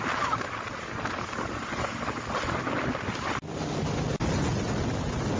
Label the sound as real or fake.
real